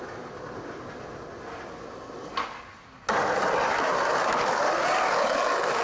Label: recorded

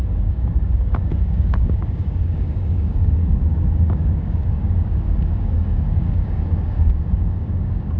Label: remade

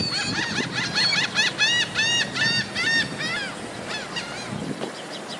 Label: recorded